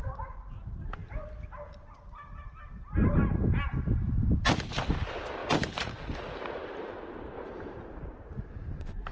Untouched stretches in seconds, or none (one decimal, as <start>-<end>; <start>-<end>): 1.0-4.7